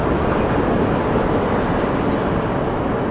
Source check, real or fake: real